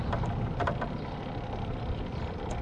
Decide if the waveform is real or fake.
real